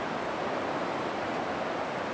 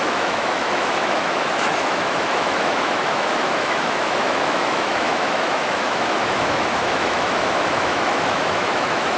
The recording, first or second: first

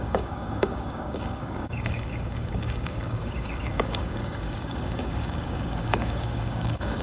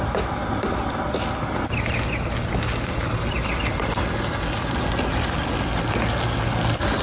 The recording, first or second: second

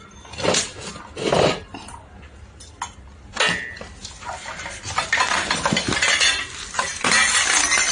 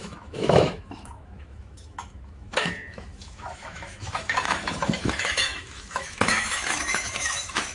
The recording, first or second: first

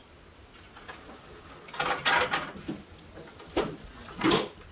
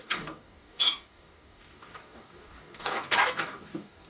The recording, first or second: first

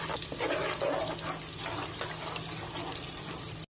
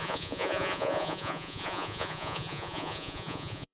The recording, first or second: first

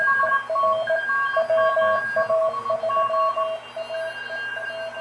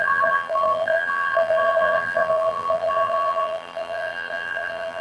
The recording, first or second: first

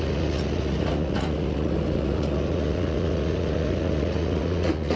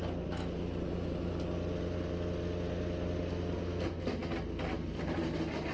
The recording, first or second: second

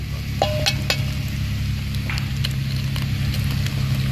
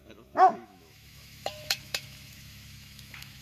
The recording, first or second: first